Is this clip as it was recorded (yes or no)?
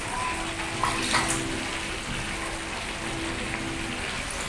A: yes